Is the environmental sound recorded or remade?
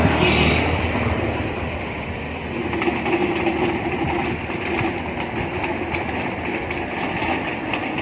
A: recorded